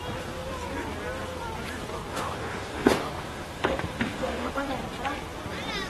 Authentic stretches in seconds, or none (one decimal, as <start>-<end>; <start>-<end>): 0.0-2.1; 4.7-5.9